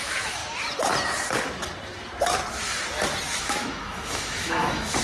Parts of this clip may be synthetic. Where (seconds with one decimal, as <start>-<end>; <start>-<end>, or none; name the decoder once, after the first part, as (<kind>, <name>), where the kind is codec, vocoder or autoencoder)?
0.0-0.4 (autoencoder, DAC-VAE); 3.4-5.0